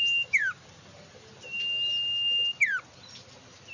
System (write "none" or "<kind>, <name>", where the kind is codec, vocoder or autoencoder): none